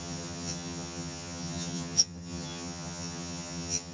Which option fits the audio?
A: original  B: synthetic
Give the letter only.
B